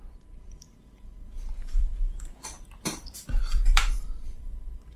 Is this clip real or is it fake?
fake